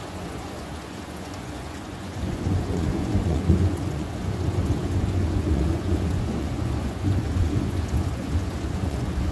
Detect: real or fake fake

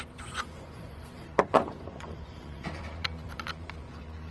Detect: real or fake fake